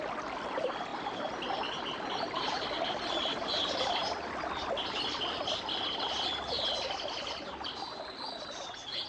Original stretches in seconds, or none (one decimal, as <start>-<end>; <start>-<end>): 0.0-0.9; 1.8-9.1